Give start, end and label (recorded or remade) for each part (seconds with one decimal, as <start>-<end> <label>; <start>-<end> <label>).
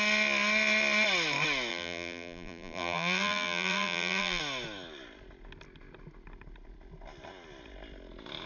0.0-1.7 recorded; 1.7-4.4 remade; 4.4-8.5 recorded